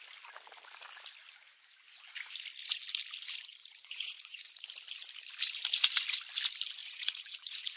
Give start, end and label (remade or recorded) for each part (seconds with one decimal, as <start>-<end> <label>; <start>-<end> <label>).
0.0-3.6 recorded; 3.6-4.5 remade; 4.5-6.8 recorded; 6.8-7.8 remade